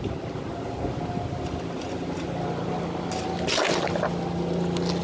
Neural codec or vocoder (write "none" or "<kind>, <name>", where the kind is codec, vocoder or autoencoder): none